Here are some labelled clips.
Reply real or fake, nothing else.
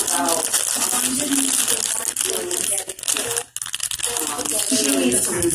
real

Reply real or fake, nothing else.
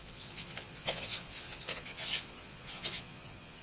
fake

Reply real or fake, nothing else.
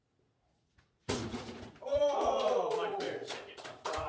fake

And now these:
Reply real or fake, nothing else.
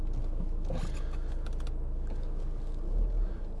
real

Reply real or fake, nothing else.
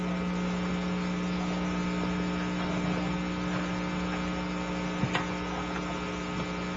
real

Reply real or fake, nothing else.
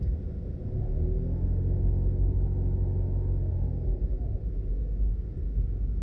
real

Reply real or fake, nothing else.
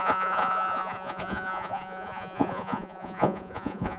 fake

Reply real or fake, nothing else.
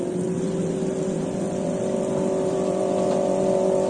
real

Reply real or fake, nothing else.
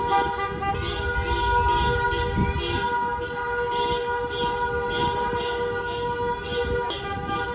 real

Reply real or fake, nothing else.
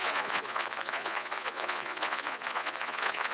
fake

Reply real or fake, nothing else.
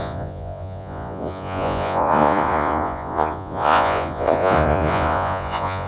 fake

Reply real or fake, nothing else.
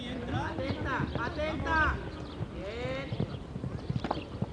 real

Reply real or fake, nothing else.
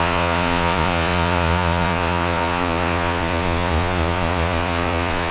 fake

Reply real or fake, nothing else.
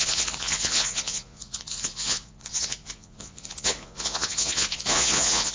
fake